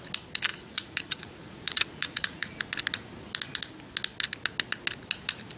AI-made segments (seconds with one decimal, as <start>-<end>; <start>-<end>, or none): 0.5-2.6